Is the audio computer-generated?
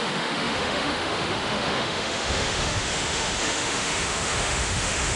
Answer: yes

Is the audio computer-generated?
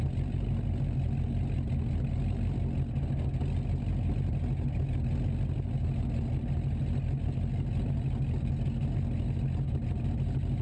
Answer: no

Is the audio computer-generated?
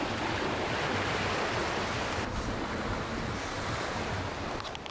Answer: no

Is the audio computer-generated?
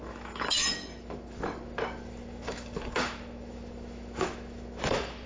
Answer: yes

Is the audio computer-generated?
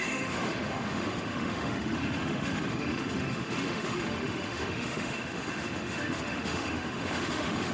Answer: yes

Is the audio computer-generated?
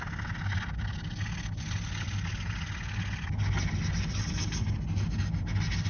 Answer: no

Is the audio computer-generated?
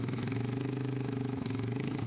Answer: yes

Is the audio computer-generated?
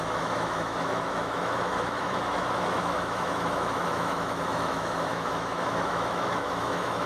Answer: yes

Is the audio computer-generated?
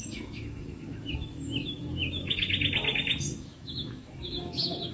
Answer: yes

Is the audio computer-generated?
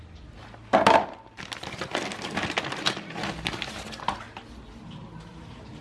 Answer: no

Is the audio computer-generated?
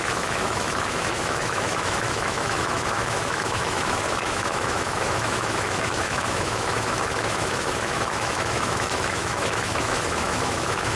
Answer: yes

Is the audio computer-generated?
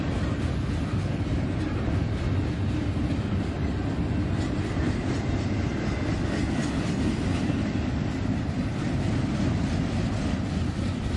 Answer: no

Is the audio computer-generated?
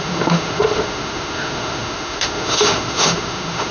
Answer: yes